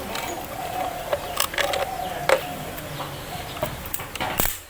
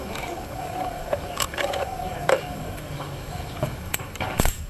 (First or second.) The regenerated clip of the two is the second